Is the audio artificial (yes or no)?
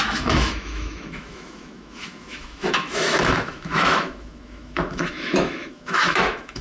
yes